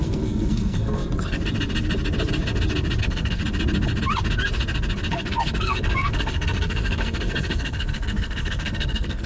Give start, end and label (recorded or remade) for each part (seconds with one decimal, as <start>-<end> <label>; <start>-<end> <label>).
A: 0.0-1.0 remade; 1.0-3.0 recorded; 3.0-3.4 remade; 3.4-5.1 recorded; 5.1-9.3 remade